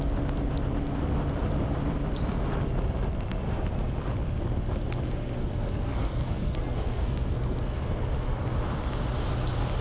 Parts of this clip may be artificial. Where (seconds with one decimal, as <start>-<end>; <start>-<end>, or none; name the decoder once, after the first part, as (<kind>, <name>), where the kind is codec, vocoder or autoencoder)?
5.4-7.8 (codec, SNAC)

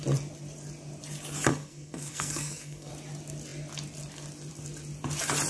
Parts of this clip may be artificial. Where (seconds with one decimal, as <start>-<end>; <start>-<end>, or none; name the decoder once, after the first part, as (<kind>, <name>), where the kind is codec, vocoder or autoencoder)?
1.5-2.9 (codec, SNAC)

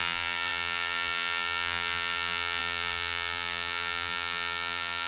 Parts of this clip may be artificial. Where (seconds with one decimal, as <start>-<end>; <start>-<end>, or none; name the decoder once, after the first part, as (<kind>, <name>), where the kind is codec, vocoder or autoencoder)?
0.0-5.1 (vocoder, BigVGAN v2)

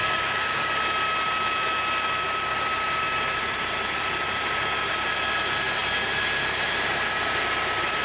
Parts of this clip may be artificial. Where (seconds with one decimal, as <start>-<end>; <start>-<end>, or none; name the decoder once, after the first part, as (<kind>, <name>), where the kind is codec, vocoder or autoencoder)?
0.0-0.8 (codec, DAC)